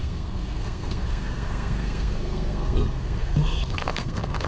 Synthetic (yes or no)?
yes